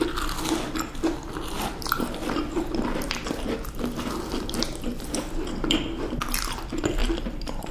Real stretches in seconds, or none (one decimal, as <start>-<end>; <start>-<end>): 0.0-7.0